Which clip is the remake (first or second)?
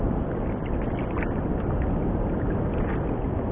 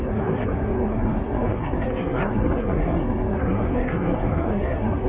second